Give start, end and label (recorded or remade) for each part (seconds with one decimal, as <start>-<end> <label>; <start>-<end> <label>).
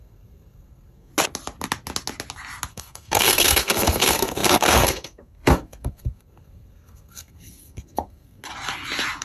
0.0-1.1 remade; 1.1-2.7 recorded; 2.7-8.4 remade; 8.4-9.2 recorded